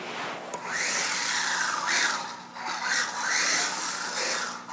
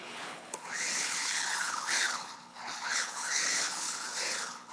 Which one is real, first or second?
first